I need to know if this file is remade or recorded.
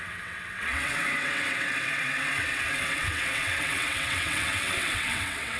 remade